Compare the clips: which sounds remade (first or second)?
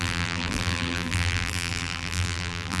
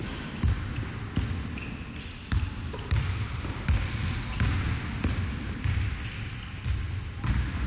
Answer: first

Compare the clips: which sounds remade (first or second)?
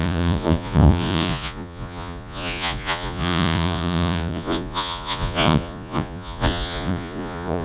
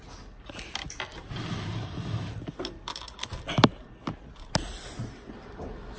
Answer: first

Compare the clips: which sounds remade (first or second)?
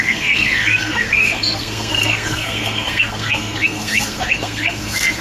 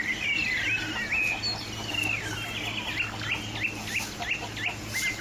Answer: first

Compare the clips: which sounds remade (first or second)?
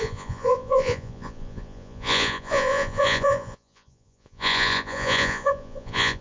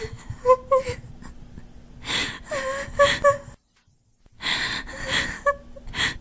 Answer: first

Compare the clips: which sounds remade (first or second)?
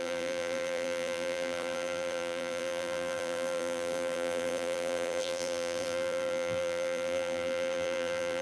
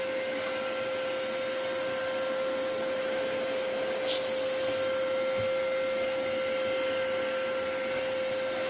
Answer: first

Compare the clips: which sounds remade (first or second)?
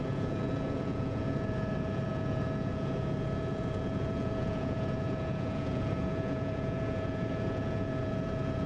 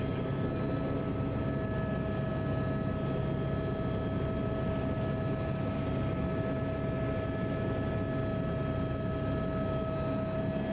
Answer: first